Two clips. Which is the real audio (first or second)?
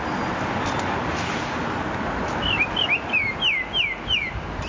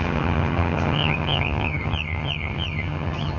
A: first